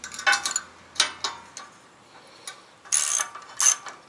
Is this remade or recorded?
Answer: recorded